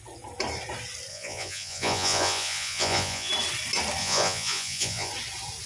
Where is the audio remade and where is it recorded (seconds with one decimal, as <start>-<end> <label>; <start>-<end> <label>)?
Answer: 0.0-1.1 recorded; 1.1-3.3 remade; 3.3-4.0 recorded; 4.0-5.1 remade; 5.1-5.7 recorded